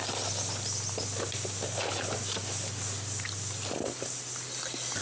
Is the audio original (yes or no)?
yes